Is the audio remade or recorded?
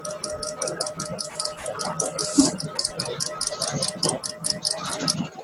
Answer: recorded